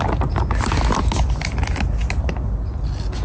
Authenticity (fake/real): real